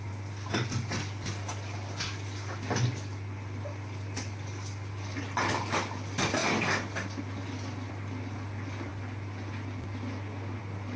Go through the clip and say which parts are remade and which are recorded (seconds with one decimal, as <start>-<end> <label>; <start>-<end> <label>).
0.0-11.0 recorded